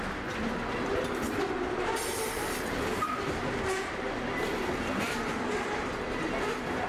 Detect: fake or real real